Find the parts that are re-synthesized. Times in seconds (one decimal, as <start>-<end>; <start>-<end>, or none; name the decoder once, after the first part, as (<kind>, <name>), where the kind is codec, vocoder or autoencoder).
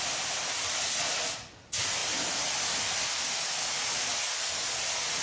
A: none